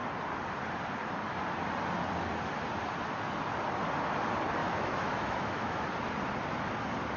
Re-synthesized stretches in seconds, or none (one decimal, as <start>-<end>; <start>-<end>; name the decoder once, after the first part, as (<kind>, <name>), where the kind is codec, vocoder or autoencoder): 4.6-5.8 (autoencoder, DAC-VAE)